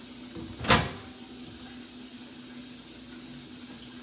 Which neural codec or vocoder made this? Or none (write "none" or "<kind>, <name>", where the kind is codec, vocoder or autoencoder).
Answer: none